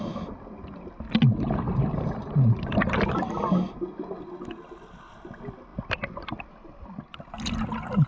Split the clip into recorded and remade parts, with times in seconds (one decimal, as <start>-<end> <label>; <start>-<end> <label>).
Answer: 0.0-5.7 recorded; 5.7-7.2 remade; 7.2-8.1 recorded